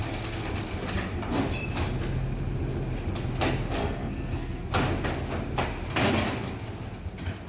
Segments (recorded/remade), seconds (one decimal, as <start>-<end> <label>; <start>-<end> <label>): 0.0-3.8 recorded; 3.8-4.7 remade; 4.7-7.5 recorded